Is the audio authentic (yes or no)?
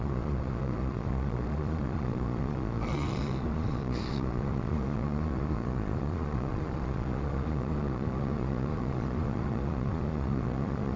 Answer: no